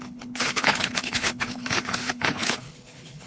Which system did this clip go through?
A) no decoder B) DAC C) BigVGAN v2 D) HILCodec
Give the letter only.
D